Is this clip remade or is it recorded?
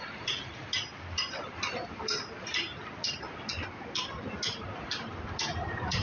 recorded